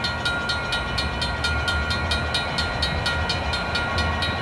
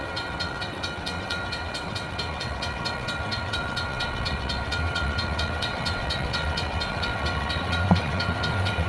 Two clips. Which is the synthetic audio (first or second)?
second